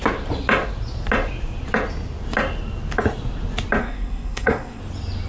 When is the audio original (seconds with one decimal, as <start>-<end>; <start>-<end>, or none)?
0.0-3.8; 4.8-5.3